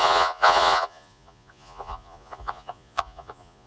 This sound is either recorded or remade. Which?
remade